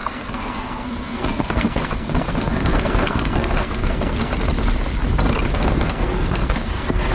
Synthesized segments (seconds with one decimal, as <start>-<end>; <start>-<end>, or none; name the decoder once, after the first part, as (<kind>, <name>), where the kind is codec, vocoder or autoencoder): 0.0-4.3 (codec, SNAC); 5.5-7.1